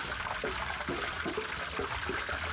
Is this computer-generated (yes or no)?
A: yes